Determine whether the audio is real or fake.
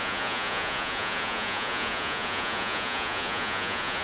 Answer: fake